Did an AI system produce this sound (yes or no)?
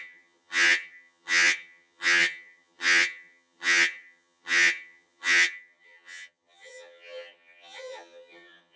yes